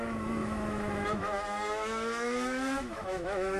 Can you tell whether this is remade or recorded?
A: remade